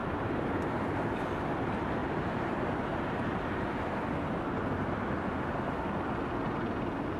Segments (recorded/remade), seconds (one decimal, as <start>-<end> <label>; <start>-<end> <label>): 0.0-0.8 remade; 0.8-2.0 recorded; 2.0-4.4 remade; 4.4-7.2 recorded